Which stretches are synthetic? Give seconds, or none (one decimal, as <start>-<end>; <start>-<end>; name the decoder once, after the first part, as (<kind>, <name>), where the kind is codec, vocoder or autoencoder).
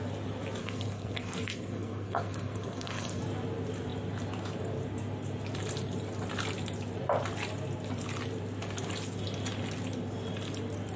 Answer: 0.6-3.2 (codec, SNAC)